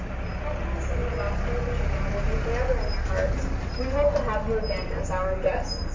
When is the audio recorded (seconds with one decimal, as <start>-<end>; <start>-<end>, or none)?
0.0-5.9